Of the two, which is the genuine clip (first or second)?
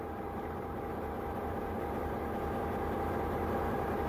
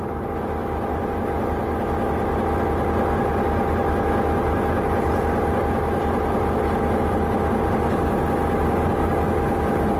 second